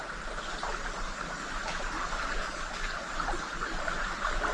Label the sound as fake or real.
real